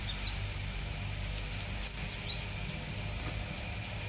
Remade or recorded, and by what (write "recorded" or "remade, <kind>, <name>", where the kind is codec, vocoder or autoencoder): recorded